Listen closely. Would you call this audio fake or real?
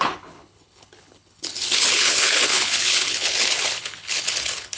fake